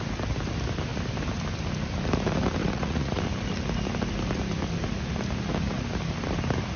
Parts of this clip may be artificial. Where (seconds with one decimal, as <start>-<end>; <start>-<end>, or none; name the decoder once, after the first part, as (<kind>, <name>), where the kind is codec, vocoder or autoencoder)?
2.6-3.2 (vocoder, Vocos)